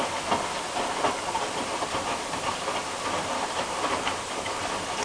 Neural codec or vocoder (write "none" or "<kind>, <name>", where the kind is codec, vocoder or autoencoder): none